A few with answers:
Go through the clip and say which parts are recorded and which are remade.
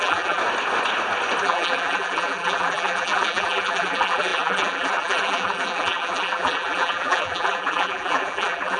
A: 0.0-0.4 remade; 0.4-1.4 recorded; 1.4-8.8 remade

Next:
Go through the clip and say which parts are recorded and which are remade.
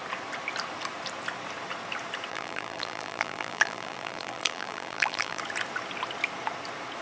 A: 0.0-2.3 recorded; 2.3-5.4 remade; 5.4-7.0 recorded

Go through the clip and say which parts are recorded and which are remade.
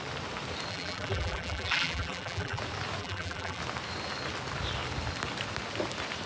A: 0.0-0.7 recorded; 0.7-2.6 remade; 2.6-3.0 recorded; 3.0-3.6 remade; 3.6-6.3 recorded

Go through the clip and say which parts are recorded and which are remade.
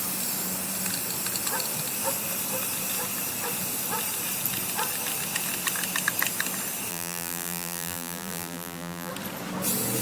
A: 0.0-6.9 recorded; 6.9-9.1 remade; 9.1-10.0 recorded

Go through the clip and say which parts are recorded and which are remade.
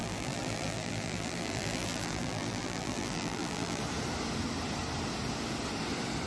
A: 0.0-3.8 remade; 3.8-6.3 recorded